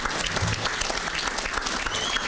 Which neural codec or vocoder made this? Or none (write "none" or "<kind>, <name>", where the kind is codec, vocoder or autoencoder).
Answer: none